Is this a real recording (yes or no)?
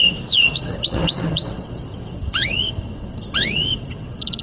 no